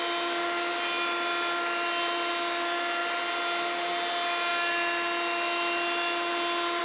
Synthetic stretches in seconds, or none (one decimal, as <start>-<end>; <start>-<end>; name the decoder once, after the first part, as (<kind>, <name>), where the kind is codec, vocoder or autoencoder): none